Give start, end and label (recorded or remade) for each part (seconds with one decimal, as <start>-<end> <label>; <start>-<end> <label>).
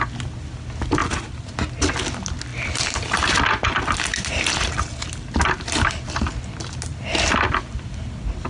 0.0-8.5 recorded